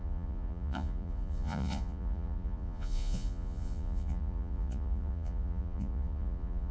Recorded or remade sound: remade